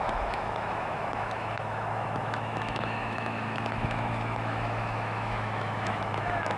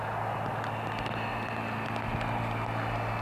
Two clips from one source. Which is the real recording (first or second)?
second